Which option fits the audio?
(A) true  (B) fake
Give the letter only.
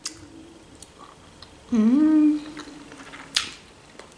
A